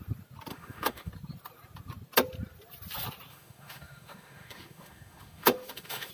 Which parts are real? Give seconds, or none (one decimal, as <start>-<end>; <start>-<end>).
0.0-0.5; 1.1-3.3